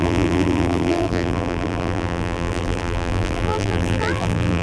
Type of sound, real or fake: fake